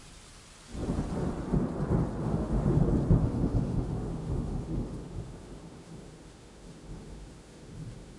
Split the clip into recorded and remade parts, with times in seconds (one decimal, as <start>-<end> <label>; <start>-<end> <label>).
0.0-2.2 recorded; 2.2-2.8 remade; 2.8-3.2 recorded; 3.2-8.2 remade